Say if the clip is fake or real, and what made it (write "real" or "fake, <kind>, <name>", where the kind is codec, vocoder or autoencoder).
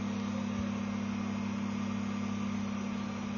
real